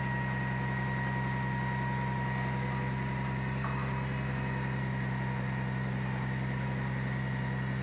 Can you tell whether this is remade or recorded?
recorded